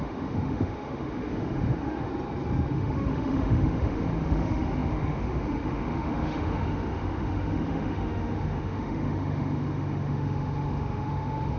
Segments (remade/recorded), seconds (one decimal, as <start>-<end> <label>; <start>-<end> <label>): 0.0-2.1 remade; 2.1-2.7 recorded; 2.7-11.6 remade

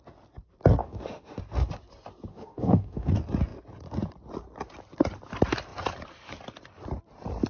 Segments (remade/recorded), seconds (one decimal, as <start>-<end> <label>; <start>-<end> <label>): 0.0-0.8 recorded; 0.8-1.4 remade; 1.4-2.3 recorded; 2.3-3.1 remade; 3.1-7.5 recorded

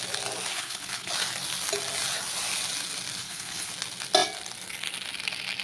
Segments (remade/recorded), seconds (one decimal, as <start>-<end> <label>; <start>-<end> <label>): 0.0-0.5 recorded; 0.5-1.1 remade; 1.1-3.2 recorded; 3.2-3.7 remade; 3.7-5.6 recorded

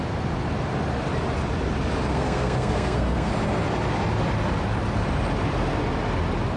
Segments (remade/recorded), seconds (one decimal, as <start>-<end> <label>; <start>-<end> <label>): 0.0-2.1 recorded; 2.1-3.3 remade; 3.3-6.6 recorded

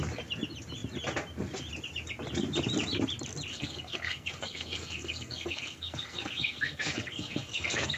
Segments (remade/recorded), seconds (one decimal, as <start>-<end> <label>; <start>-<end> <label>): 0.0-3.5 recorded; 3.5-8.0 remade

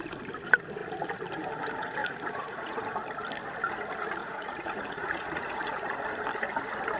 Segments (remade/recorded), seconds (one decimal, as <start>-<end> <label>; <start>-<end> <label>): 0.0-2.0 recorded; 2.0-2.8 remade; 2.8-4.2 recorded; 4.2-5.9 remade; 5.9-7.0 recorded